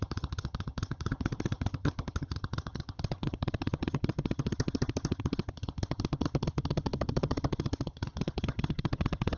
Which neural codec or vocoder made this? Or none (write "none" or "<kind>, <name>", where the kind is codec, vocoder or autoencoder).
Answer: vocoder, HiFi-GAN